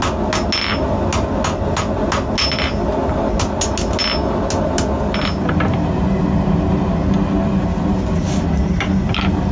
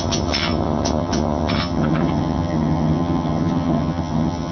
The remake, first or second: second